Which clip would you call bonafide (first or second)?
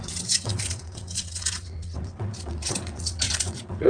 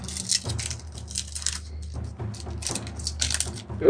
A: second